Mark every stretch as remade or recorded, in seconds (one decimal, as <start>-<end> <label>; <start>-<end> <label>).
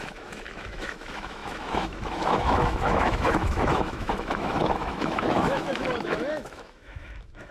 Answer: 0.0-7.5 remade